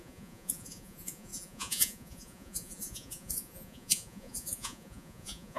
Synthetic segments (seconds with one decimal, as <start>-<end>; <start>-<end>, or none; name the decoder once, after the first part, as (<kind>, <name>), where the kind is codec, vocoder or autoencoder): 0.0-5.6 (vocoder, Vocos)

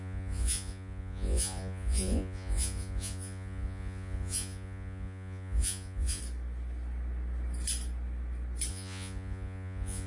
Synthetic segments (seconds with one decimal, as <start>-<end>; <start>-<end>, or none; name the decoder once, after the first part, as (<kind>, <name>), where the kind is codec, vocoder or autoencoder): 0.0-6.2 (vocoder, Vocos); 8.7-10.1